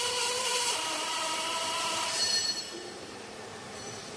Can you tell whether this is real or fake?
fake